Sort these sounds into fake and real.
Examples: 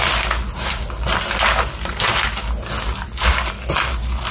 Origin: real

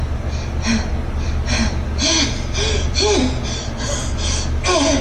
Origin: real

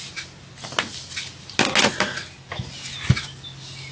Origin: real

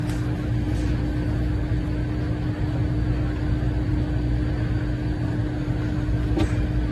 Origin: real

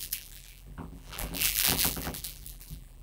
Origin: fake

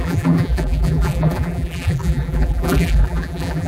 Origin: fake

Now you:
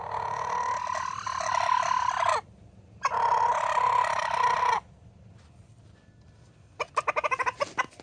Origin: real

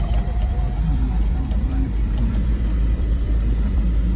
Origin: fake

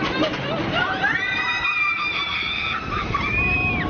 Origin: fake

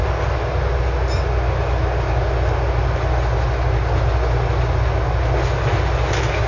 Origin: real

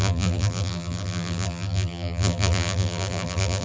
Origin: fake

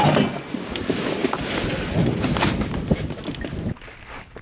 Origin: real